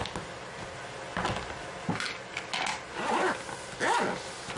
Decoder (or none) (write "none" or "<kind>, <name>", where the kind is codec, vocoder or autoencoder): none